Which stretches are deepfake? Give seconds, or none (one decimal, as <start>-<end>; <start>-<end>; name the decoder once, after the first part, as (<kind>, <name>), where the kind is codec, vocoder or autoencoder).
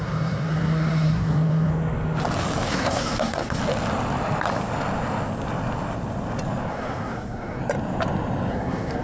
0.0-1.7 (codec, SNAC); 2.7-3.6; 6.7-7.6; 8.5-9.0